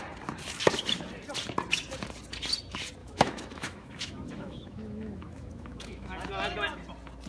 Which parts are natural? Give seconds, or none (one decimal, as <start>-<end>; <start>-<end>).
0.0-3.0; 6.3-7.3